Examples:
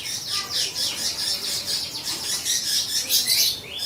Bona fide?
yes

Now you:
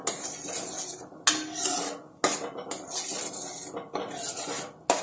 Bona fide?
yes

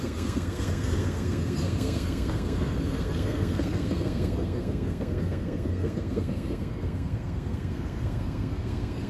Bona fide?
no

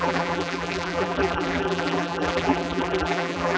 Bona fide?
no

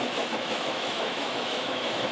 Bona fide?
no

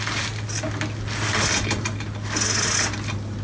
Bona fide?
yes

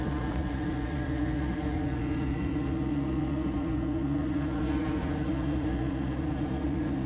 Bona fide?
no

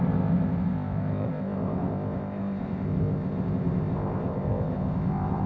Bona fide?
no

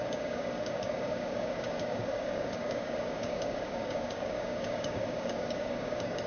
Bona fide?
no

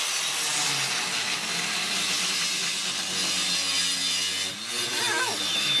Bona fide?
yes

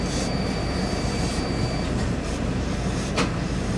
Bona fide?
no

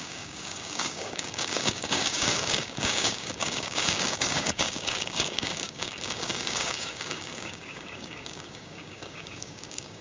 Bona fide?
no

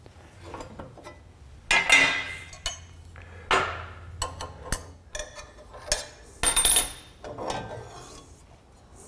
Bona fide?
yes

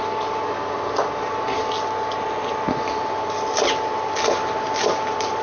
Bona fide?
yes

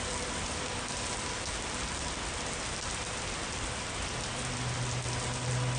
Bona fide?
yes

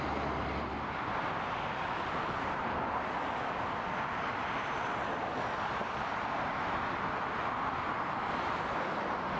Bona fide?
yes